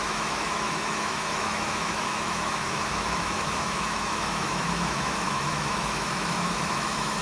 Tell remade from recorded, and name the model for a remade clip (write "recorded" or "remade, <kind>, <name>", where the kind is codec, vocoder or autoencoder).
remade, autoencoder, DAC-VAE